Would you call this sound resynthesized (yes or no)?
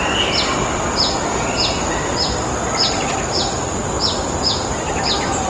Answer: no